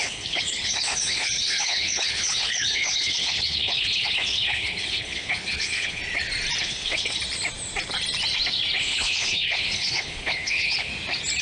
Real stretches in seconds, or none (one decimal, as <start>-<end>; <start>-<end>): 6.0-6.6; 7.2-8.8; 10.9-11.4